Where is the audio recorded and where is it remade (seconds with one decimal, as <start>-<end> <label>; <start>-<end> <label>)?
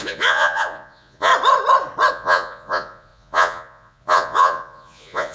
0.0-1.3 remade; 1.3-2.1 recorded; 2.1-5.3 remade